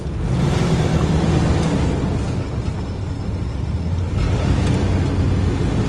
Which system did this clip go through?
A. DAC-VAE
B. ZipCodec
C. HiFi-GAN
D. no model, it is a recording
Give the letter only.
D